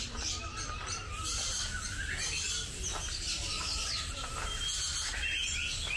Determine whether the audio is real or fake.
real